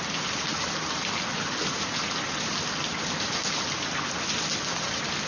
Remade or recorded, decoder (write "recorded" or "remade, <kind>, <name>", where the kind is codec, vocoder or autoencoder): recorded